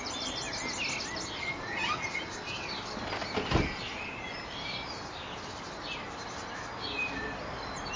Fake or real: real